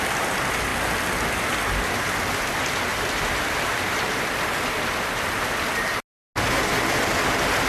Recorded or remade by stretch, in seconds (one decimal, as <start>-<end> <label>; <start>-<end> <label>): 0.0-7.7 recorded